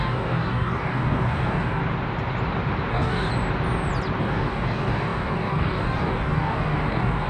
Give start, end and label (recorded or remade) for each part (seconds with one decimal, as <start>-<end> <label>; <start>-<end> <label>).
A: 0.0-1.8 remade; 1.8-2.9 recorded; 2.9-3.3 remade; 3.3-4.2 recorded; 4.2-7.3 remade